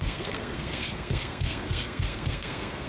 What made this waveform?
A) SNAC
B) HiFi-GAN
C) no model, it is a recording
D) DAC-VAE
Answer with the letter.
A